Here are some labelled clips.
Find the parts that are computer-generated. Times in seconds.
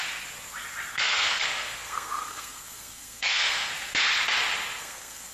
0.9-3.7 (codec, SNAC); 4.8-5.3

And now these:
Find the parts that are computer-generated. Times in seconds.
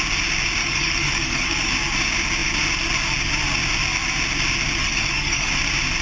0.6-1.7 (codec, DAC); 4.8-5.5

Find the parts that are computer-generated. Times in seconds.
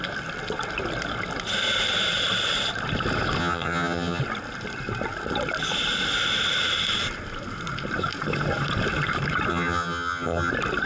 3.4-4.2 (vocoder, HiFi-GAN); 9.5-10.5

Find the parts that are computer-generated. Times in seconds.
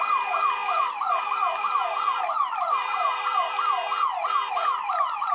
0.0-0.6 (vocoder, BigVGAN v2); 1.2-3.8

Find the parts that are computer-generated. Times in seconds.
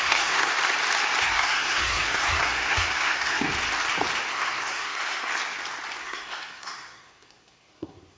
0.0-0.5 (codec, SNAC); 1.2-3.5; 4.3-5.3; 6.0-8.2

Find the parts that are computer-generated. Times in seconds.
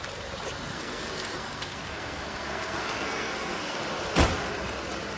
0.7-3.8 (codec, SNAC)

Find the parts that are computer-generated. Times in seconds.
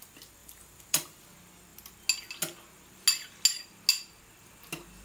0.4-1.2 (vocoder, BigVGAN v2)